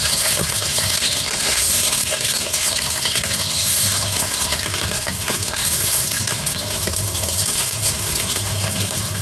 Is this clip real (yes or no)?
no